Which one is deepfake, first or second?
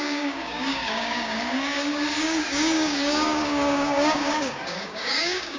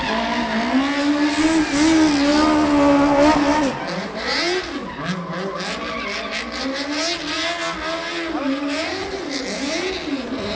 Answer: first